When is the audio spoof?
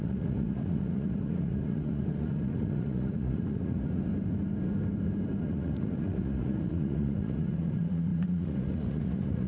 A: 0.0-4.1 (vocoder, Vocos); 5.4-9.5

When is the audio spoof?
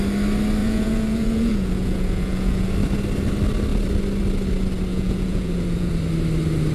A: 0.6-2.7 (vocoder, Vocos); 4.9-5.9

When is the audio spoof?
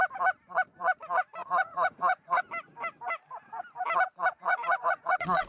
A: 1.4-2.4 (vocoder, Vocos); 4.5-5.5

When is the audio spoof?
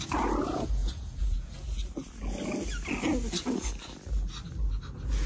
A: 0.8-1.5 (vocoder, Vocos)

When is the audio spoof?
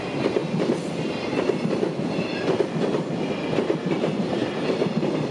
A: none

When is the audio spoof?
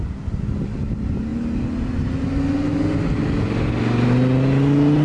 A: none